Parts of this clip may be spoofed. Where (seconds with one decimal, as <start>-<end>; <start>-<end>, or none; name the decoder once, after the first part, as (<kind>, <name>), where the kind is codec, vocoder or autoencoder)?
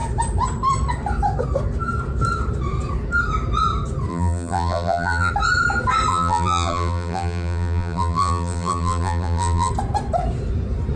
4.1-5.3 (vocoder, BigVGAN v2); 6.1-9.7